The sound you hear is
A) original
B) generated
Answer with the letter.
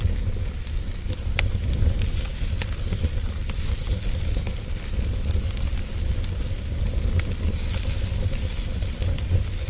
A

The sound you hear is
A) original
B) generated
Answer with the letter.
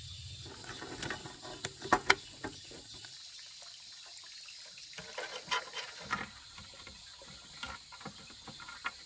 A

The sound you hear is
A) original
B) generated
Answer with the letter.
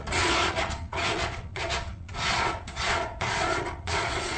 B